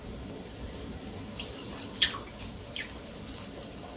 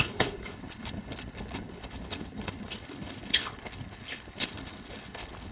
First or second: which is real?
first